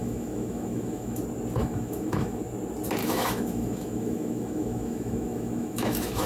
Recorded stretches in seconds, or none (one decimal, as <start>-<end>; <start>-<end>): 1.2-1.6; 2.4-3.0